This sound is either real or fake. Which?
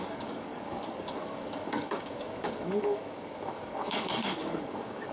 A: fake